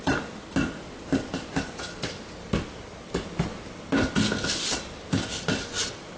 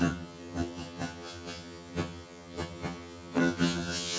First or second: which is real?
first